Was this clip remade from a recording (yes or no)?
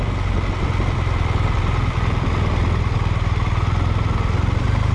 no